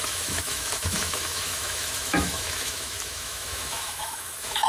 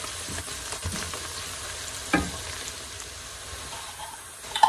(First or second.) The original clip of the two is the second